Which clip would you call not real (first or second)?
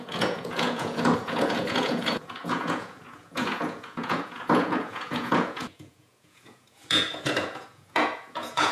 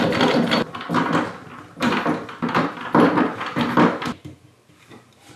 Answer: first